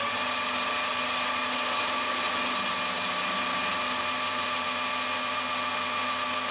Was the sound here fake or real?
real